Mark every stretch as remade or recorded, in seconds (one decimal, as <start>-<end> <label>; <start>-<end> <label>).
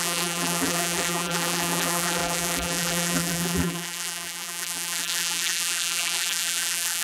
0.0-7.0 remade